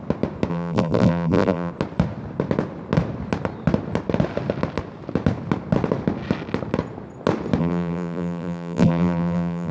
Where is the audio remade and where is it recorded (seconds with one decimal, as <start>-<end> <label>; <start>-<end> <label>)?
0.0-0.5 recorded; 0.5-1.7 remade; 1.7-7.6 recorded; 7.6-9.7 remade

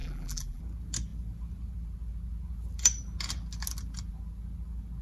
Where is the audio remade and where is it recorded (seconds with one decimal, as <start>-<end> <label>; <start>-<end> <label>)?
0.0-0.6 remade; 0.6-5.0 recorded

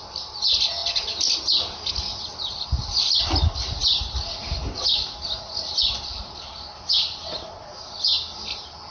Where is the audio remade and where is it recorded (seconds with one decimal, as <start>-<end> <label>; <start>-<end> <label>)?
0.0-8.9 recorded

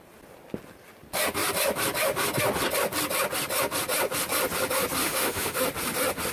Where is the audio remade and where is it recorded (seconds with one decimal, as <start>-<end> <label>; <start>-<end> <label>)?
0.0-5.0 recorded; 5.0-5.6 remade; 5.6-6.3 recorded

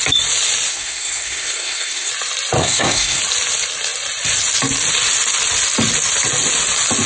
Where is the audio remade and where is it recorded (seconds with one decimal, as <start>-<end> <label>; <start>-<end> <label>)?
0.0-0.7 recorded; 0.7-2.1 remade; 2.1-2.6 recorded; 2.6-3.2 remade; 3.2-7.1 recorded

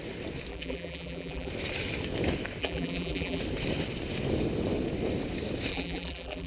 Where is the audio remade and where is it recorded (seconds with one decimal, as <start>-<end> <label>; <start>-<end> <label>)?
0.0-0.5 recorded; 0.5-1.5 remade; 1.5-2.6 recorded; 2.6-3.4 remade; 3.4-5.7 recorded; 5.7-6.5 remade

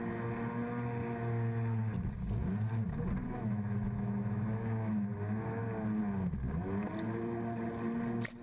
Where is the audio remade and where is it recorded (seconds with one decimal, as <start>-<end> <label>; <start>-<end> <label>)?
0.0-3.2 recorded; 3.2-5.6 remade; 5.6-8.4 recorded

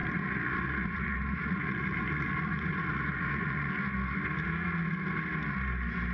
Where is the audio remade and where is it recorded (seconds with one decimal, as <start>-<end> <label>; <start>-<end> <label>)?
0.0-3.7 remade; 3.7-6.1 recorded